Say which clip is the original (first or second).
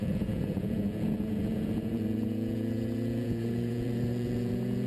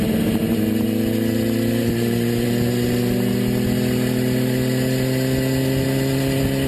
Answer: second